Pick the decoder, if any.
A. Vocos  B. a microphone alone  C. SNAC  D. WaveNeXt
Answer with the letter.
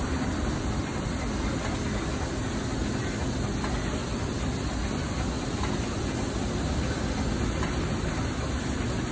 B